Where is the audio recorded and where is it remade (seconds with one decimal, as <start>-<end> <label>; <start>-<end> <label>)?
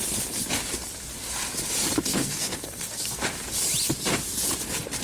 0.0-2.1 recorded; 2.1-3.2 remade; 3.2-5.0 recorded